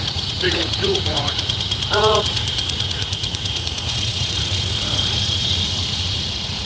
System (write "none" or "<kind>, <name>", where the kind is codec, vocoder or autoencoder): vocoder, Vocos